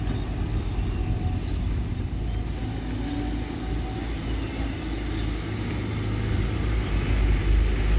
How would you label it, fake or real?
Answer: real